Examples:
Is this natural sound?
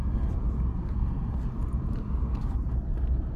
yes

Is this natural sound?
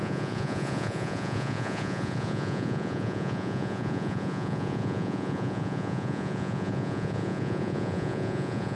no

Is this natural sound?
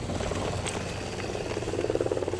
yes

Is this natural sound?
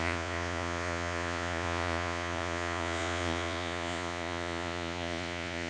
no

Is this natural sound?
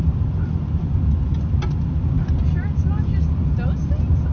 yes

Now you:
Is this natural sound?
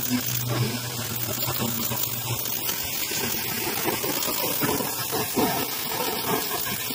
yes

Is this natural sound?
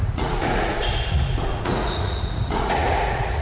no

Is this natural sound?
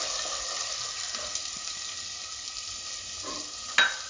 yes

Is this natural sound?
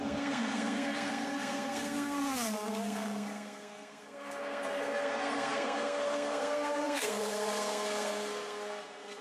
no